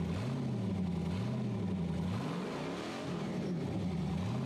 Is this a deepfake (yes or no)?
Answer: no